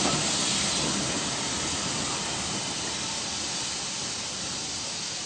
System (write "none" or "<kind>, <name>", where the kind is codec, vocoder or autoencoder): none